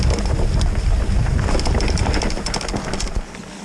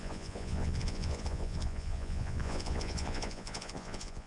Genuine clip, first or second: first